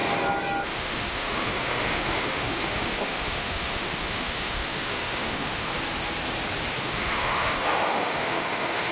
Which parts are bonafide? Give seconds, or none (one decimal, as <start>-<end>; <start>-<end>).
0.0-0.6; 5.7-6.7